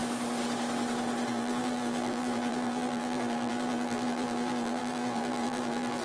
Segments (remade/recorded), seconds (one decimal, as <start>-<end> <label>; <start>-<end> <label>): 0.0-1.3 recorded; 1.3-6.0 remade